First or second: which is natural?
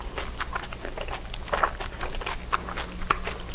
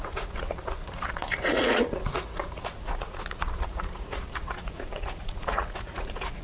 first